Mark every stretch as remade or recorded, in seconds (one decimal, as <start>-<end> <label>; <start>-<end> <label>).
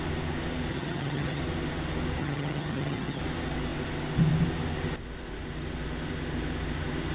0.0-0.7 recorded; 0.7-1.4 remade; 1.4-2.2 recorded; 2.2-3.2 remade; 3.2-7.1 recorded